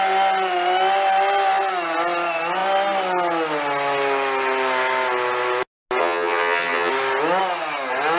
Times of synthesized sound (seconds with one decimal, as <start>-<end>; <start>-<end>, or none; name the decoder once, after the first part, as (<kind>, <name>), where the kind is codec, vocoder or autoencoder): 6.0-6.9 (vocoder, HiFi-GAN)